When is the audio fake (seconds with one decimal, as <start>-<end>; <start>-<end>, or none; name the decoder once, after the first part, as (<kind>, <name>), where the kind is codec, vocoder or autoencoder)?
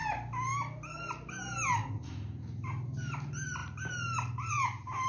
none